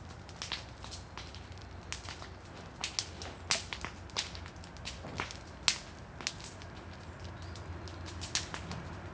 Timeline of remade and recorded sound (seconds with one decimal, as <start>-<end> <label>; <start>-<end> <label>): 0.0-9.1 recorded